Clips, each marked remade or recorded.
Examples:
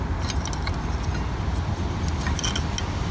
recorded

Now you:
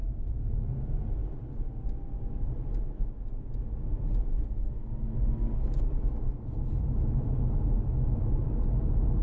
recorded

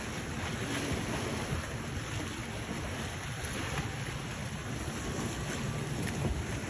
recorded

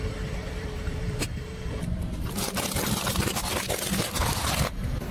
remade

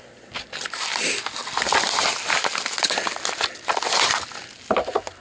recorded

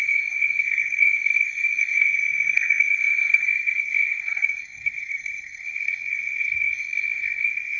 remade